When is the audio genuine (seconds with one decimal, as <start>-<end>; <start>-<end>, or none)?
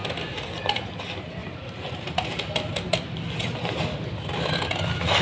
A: 0.0-5.2